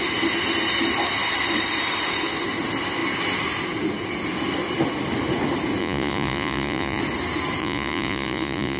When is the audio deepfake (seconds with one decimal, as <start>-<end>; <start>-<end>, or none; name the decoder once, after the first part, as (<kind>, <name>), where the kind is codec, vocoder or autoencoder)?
5.8-7.0 (vocoder, Vocos); 7.6-8.8